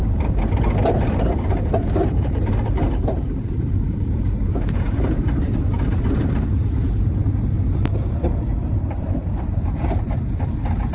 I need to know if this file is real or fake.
fake